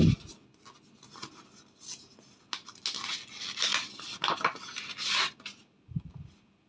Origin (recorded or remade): recorded